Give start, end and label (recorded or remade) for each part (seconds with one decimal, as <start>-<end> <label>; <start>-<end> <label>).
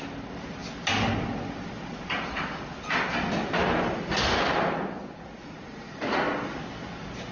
0.0-5.4 recorded; 5.4-6.2 remade; 6.2-7.3 recorded